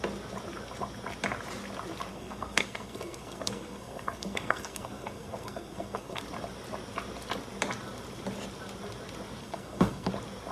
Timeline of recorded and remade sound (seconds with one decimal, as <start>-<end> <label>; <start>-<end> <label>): 0.0-2.1 recorded; 2.1-6.2 remade; 6.2-9.4 recorded; 9.4-10.1 remade; 10.1-10.5 recorded